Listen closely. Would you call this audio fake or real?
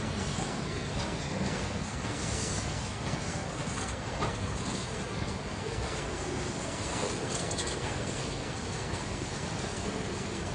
fake